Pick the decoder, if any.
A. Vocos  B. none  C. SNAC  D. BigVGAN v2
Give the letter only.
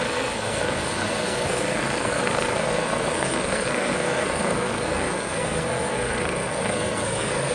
C